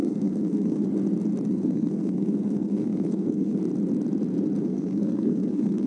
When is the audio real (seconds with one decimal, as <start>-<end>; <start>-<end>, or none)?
0.9-1.5; 3.6-4.6